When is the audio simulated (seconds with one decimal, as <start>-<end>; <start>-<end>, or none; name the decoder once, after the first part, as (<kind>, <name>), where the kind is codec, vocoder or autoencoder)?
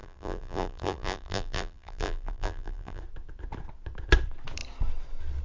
0.0-3.0 (vocoder, BigVGAN v2)